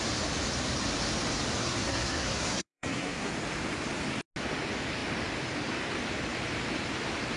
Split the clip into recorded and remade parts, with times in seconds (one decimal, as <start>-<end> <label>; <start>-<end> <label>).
0.0-1.6 recorded; 1.6-3.3 remade; 3.3-7.4 recorded